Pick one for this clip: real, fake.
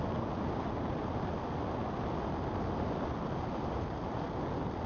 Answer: real